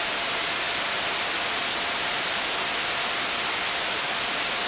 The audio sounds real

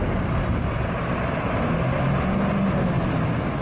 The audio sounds real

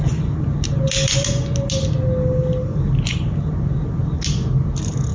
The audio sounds real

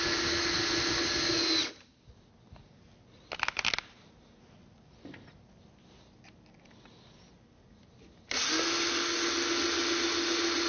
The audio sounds real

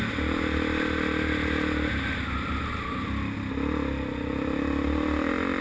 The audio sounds real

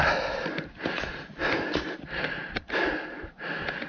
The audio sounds real